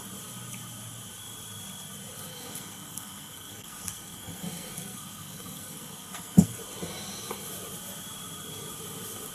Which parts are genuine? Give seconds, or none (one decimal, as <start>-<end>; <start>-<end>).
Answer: 0.0-2.3; 6.6-9.3